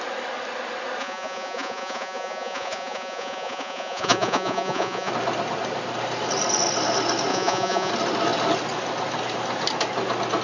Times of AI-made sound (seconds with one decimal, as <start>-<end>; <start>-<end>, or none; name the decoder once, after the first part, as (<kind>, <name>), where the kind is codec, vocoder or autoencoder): 1.0-5.1 (vocoder, Vocos); 7.3-7.9